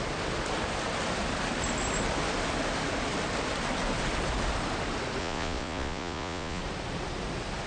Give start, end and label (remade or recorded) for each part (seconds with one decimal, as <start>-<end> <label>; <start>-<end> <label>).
0.0-5.2 recorded; 5.2-6.6 remade; 6.6-7.7 recorded